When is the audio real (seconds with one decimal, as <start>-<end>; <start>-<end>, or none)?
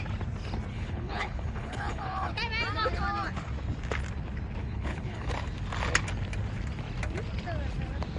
0.0-0.7; 2.3-4.6; 5.3-8.2